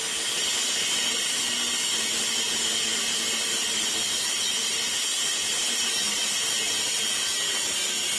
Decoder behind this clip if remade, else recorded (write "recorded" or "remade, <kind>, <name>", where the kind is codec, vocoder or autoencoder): recorded